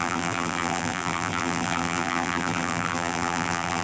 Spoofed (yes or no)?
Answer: yes